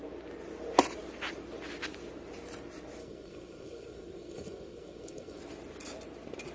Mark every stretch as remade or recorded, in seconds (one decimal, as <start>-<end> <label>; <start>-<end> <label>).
0.0-3.0 recorded; 3.0-5.4 remade; 5.4-6.5 recorded